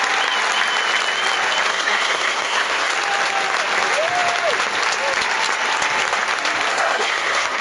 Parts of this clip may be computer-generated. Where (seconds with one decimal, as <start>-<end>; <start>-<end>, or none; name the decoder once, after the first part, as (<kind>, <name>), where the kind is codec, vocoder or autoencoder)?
1.7-2.9 (codec, SNAC); 6.7-7.6